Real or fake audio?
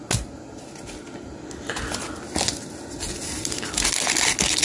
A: real